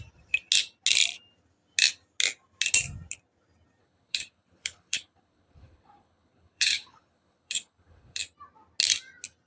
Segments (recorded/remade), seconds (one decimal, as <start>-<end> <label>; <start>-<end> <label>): 0.0-3.8 recorded; 3.8-8.2 remade; 8.2-9.5 recorded